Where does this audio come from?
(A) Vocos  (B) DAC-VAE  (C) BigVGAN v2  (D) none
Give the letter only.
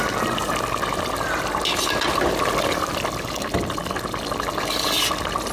D